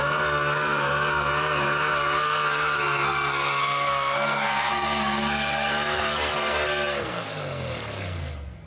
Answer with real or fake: fake